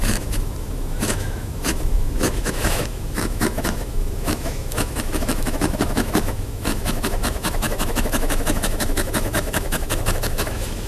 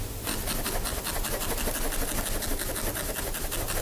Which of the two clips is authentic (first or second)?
second